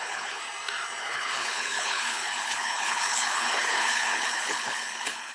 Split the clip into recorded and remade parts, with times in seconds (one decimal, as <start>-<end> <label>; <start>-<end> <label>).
0.0-0.4 remade; 0.4-1.0 recorded; 1.0-5.3 remade